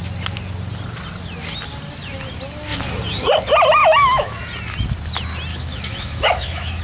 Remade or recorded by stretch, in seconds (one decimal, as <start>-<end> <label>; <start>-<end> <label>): 0.0-3.8 recorded; 3.8-4.4 remade; 4.4-5.5 recorded; 5.5-6.8 remade